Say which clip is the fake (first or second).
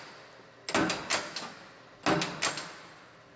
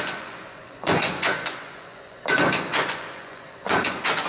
second